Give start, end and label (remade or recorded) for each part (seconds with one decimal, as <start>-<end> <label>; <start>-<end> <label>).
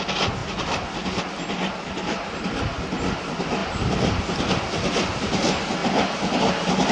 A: 0.0-6.9 recorded